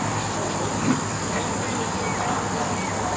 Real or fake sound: real